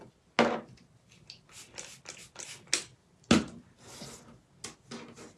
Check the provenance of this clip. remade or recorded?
recorded